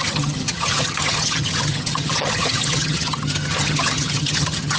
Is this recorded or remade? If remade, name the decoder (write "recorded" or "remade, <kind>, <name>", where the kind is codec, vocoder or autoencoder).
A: remade, vocoder, HiFi-GAN